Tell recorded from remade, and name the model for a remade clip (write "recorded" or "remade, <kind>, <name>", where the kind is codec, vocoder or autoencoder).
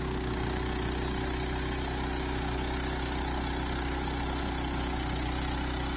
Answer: recorded